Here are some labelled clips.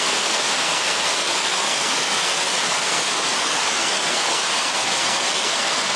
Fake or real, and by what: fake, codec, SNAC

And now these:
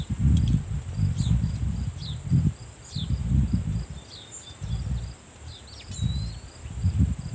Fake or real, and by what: real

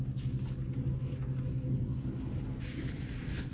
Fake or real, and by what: real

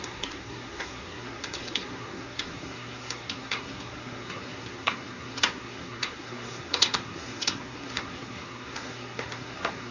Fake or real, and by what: fake, codec, SNAC